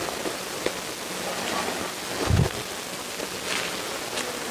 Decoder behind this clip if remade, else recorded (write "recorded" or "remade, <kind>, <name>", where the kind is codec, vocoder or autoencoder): recorded